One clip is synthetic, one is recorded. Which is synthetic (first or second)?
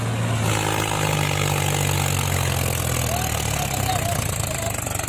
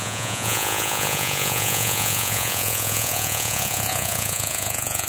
second